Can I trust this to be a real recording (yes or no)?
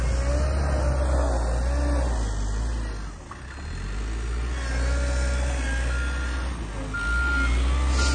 yes